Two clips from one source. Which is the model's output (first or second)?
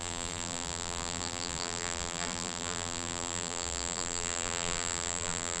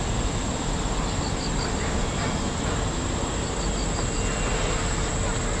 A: first